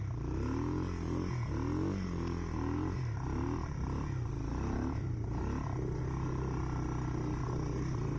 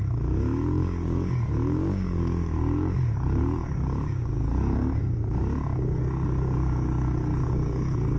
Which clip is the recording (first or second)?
first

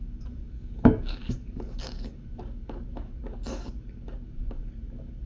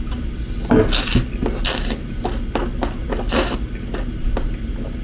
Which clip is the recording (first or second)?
second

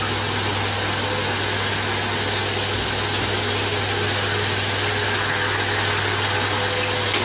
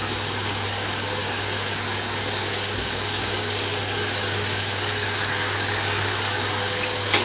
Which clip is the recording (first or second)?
first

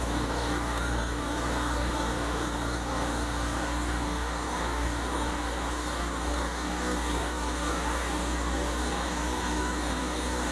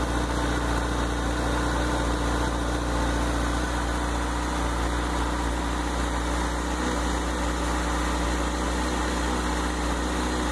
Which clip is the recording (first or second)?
second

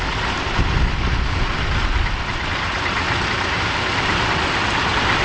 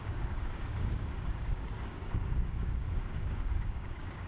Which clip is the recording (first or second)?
first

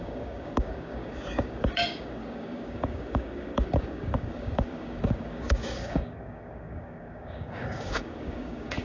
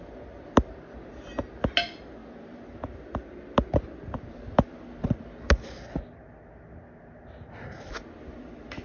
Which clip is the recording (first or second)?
second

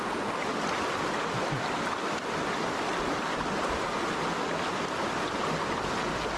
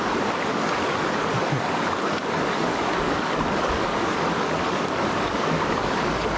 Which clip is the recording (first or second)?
first